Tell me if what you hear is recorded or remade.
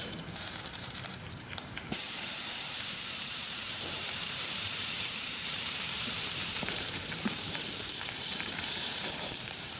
remade